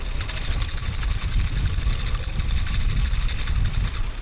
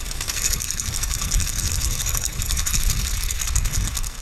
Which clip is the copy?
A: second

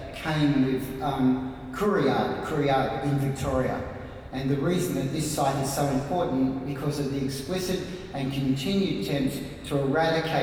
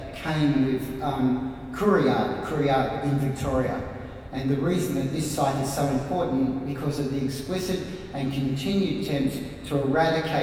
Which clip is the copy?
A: second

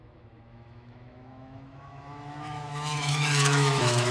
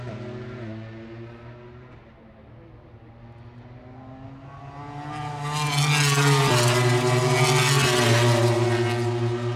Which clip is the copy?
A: first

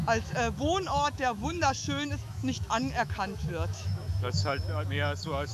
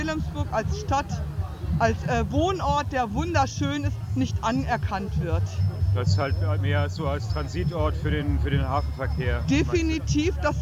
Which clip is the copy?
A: first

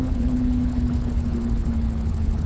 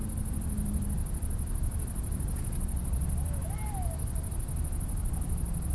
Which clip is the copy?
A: first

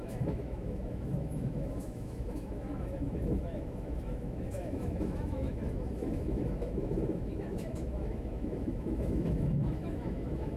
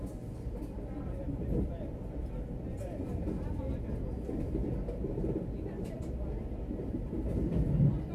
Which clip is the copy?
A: first